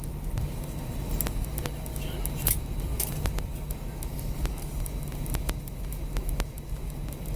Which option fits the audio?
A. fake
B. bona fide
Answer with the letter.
B